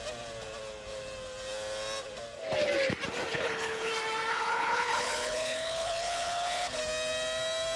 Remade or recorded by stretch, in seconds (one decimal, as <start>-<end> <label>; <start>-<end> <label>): 0.0-3.3 recorded; 3.3-3.9 remade; 3.9-4.3 recorded; 4.3-6.8 remade; 6.8-7.8 recorded